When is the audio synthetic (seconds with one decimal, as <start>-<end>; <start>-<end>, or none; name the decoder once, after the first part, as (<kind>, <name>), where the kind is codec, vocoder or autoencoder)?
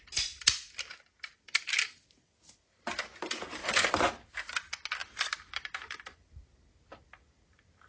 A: 3.6-4.3 (vocoder, BigVGAN v2); 5.0-6.6